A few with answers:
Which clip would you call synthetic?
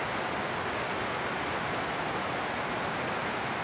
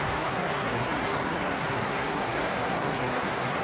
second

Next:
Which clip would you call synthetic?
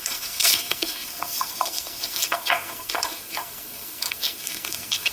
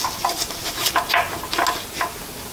first